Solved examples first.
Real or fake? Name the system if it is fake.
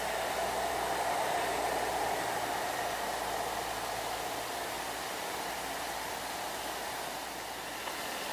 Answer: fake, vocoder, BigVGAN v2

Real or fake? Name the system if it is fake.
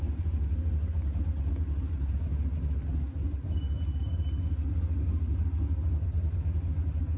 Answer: real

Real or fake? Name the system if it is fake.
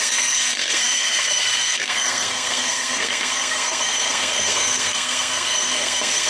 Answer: fake, codec, SNAC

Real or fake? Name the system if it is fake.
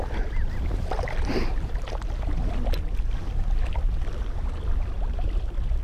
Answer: real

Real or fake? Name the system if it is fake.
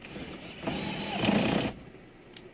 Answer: real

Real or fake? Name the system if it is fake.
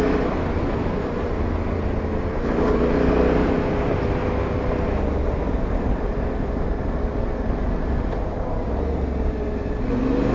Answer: real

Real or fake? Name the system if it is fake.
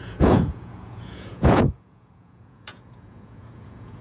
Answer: fake, vocoder, Vocos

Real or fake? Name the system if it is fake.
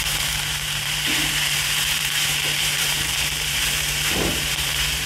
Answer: fake, vocoder, BigVGAN v2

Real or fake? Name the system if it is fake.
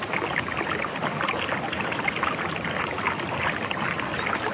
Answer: real